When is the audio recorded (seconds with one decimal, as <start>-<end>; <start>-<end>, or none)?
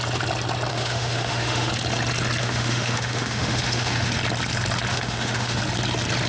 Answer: 0.0-0.7; 1.7-2.4; 4.1-4.9; 5.6-6.3